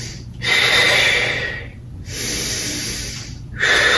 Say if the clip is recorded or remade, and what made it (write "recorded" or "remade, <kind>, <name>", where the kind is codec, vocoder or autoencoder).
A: recorded